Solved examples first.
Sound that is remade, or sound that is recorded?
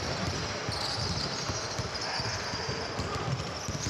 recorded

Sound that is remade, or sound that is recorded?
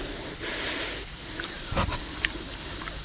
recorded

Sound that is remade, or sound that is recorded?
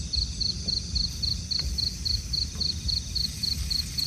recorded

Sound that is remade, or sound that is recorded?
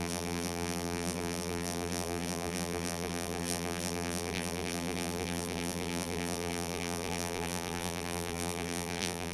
remade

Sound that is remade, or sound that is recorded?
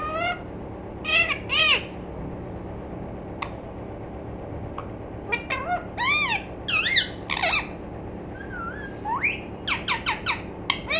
recorded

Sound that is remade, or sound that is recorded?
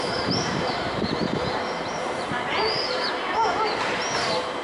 remade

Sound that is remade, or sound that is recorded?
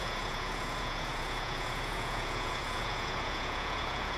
remade